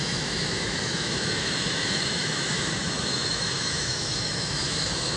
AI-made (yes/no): yes